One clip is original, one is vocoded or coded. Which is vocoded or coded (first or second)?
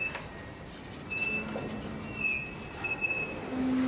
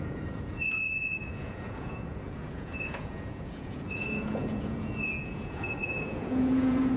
second